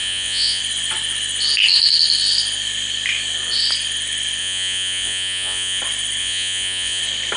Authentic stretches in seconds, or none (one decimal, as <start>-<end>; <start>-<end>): 0.6-4.4; 5.8-6.2; 7.0-7.4